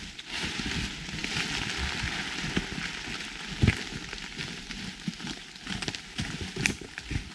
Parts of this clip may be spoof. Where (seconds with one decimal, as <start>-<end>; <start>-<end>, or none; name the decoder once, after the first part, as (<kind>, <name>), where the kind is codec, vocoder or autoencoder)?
none